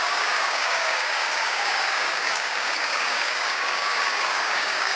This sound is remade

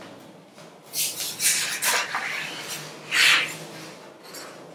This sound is recorded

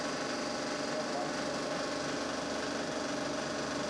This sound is recorded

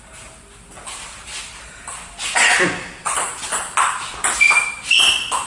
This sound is recorded